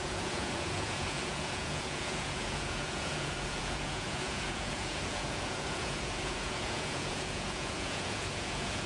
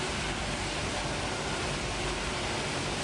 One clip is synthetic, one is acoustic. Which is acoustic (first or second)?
second